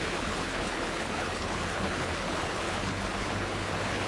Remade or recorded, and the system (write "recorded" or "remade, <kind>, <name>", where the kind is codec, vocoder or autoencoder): remade, codec, HILCodec